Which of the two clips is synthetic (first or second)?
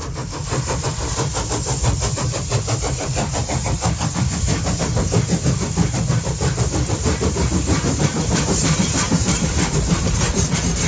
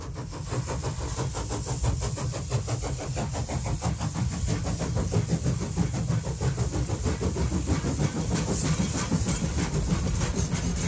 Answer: first